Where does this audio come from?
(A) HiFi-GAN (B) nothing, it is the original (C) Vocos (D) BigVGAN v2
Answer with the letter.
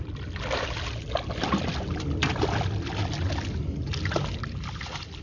B